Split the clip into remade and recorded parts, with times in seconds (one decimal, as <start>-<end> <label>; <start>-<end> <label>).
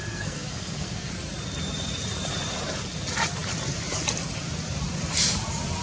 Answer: 0.0-1.1 remade; 1.1-5.8 recorded